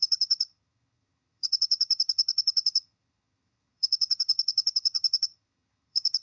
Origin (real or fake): fake